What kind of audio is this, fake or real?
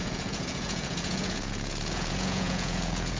fake